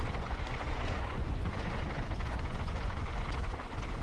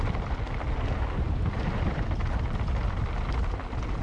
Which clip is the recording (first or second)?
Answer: second